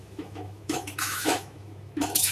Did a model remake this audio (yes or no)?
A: yes